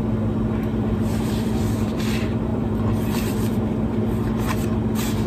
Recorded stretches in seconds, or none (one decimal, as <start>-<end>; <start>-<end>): 0.0-0.7; 2.0-2.5; 4.0-5.3